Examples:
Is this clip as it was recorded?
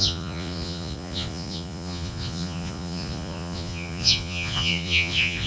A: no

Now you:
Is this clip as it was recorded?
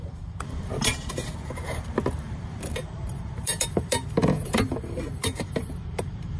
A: no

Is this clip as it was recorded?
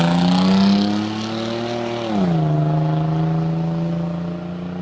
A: yes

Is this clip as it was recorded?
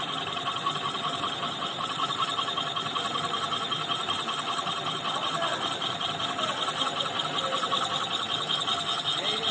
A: yes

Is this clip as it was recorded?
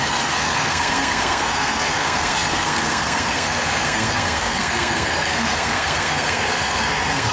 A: no